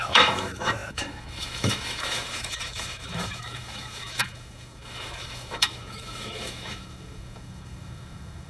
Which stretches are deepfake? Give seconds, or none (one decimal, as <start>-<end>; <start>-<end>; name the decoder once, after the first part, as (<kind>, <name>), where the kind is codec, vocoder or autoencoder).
0.0-8.5 (autoencoder, DAC-VAE)